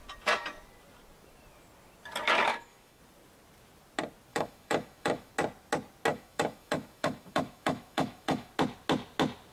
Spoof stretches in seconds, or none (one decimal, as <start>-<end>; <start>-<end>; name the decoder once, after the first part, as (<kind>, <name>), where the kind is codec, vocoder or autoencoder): 2.5-3.0 (autoencoder, DAC-VAE); 4.3-5.3; 6.1-8.5